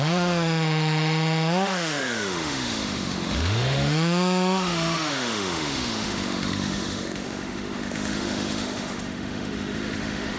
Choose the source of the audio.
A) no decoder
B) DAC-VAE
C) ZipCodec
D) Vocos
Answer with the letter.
B